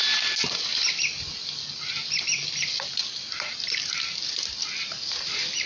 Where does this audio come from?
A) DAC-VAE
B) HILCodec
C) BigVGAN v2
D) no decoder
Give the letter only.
D